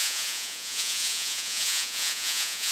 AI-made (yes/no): yes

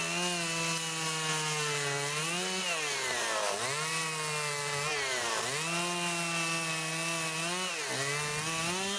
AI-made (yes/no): no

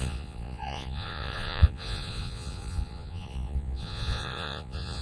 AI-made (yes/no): yes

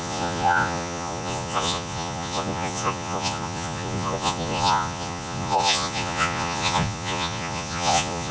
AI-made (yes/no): yes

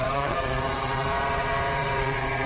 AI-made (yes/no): yes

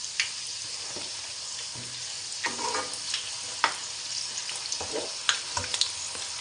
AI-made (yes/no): no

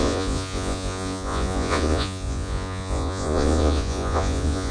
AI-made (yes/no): yes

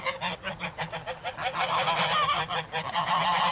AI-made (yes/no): no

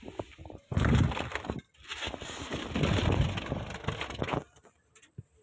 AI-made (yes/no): no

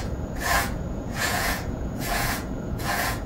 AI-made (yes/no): yes